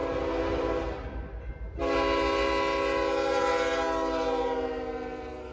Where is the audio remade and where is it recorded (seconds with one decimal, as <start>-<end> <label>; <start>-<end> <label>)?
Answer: 0.0-5.5 recorded